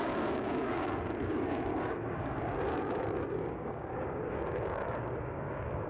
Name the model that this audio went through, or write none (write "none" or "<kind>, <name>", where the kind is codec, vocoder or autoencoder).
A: codec, DAC